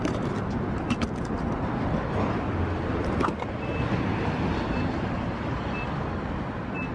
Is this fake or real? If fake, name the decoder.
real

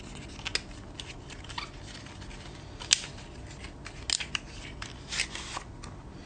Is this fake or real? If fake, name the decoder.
real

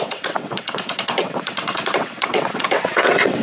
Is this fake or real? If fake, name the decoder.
fake, vocoder, WaveNeXt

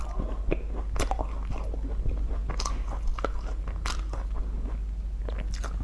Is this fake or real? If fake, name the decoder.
real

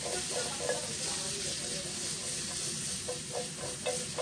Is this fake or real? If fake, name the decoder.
real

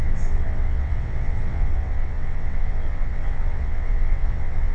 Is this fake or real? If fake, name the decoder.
fake, vocoder, WaveNeXt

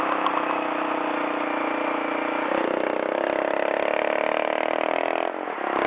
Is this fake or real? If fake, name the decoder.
real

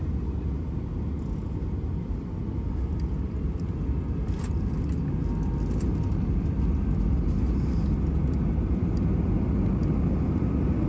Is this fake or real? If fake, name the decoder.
real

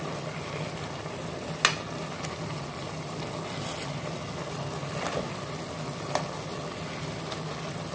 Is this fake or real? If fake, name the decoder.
real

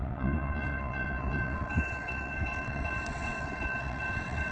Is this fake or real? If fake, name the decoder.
fake, vocoder, WaveNeXt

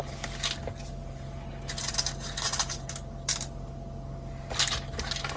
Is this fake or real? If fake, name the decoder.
real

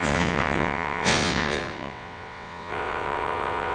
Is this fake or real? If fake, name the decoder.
fake, vocoder, WaveNeXt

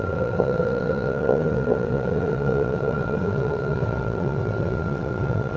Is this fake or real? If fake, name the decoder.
fake, vocoder, WaveNeXt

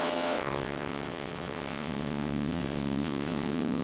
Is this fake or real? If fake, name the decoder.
fake, vocoder, WaveNeXt